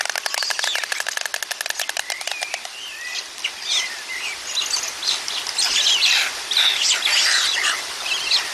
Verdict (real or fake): real